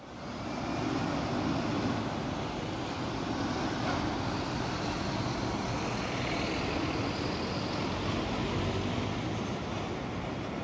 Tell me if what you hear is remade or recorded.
recorded